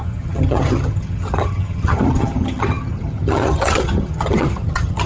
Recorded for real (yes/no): no